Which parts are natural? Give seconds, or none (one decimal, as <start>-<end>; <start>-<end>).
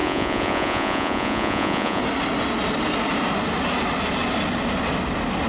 2.0-5.5